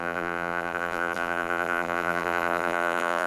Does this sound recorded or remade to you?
remade